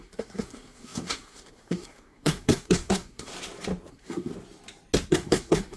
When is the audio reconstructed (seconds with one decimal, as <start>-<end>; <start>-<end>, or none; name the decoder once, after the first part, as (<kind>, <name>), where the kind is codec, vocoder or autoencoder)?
0.0-3.3 (codec, SNAC); 3.9-4.3; 5.1-5.8